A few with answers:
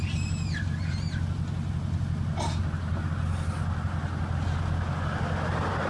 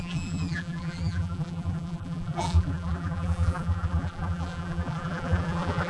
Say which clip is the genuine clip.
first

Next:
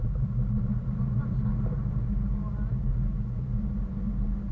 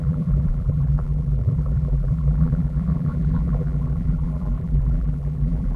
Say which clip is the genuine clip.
first